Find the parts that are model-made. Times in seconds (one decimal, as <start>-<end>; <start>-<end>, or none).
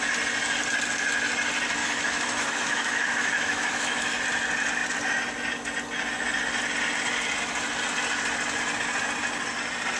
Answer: 1.8-4.2